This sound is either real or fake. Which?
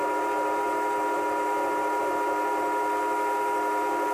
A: real